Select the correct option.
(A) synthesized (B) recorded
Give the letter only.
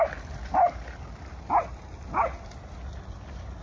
B